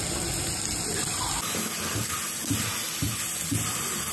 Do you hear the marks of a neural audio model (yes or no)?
no